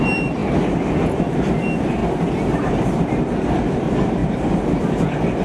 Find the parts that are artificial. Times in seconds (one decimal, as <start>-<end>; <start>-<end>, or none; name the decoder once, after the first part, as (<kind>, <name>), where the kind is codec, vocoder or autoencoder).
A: 4.2-4.8 (vocoder, BigVGAN v2)